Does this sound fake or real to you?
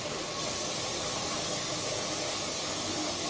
real